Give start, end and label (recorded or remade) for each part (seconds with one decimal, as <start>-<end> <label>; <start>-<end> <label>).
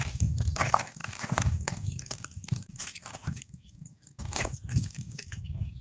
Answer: 0.0-5.8 remade